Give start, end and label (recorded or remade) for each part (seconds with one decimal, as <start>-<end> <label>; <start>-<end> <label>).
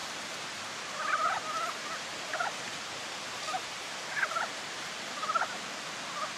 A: 0.0-6.4 recorded